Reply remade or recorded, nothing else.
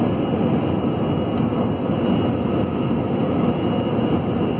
recorded